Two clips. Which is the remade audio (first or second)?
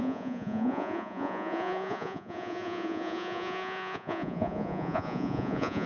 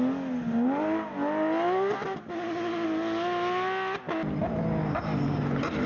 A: first